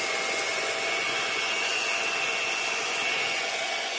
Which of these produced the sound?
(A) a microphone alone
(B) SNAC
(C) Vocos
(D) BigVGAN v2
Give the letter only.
C